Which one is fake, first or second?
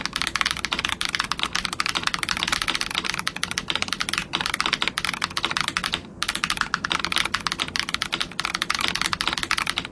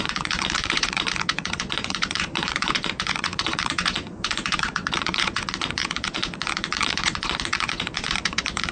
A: second